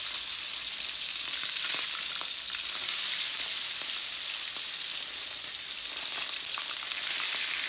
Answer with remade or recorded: recorded